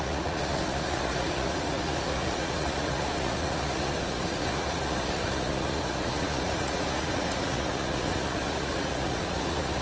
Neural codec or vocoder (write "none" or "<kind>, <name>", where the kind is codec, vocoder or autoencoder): vocoder, Vocos